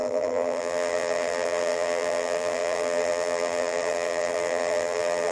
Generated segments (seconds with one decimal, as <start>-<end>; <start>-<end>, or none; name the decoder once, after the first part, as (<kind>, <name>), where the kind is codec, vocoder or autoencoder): 0.0-5.3 (vocoder, BigVGAN v2)